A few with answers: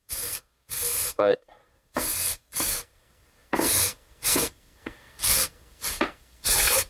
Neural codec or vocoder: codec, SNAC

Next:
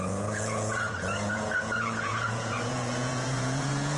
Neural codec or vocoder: vocoder, Vocos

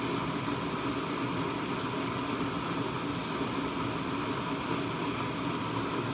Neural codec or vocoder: none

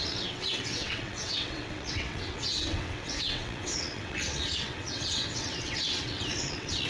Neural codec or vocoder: vocoder, WaveNeXt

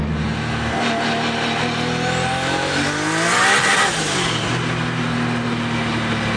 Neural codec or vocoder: none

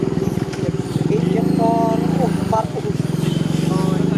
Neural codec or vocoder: none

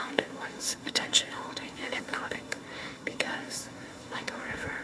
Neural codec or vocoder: codec, SNAC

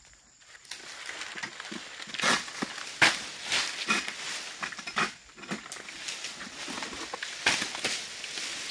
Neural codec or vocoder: none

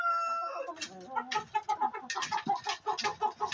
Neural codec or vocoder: none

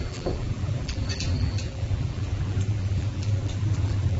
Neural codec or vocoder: vocoder, BigVGAN v2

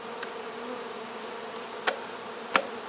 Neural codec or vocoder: none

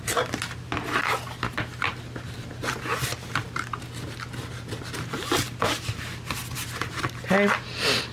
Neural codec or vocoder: none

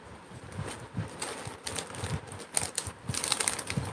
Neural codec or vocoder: none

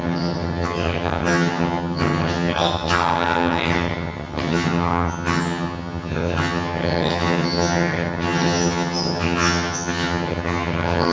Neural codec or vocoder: vocoder, HiFi-GAN